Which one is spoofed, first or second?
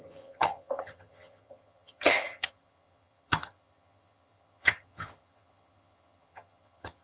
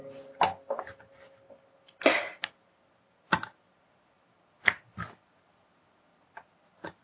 first